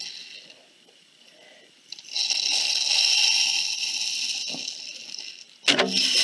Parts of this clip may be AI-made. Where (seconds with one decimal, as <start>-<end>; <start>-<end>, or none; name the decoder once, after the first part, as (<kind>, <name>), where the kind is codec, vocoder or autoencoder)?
none